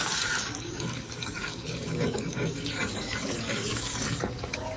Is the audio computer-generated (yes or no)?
yes